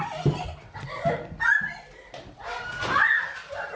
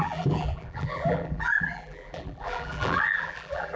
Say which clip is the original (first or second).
first